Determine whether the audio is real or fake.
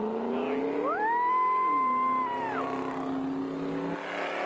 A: real